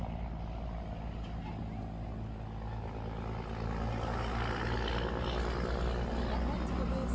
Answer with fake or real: real